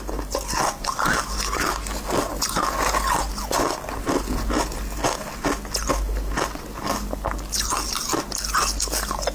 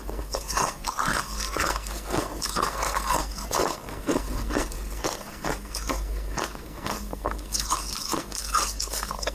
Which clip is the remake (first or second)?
second